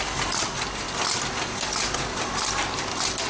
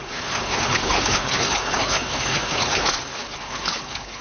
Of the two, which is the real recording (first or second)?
first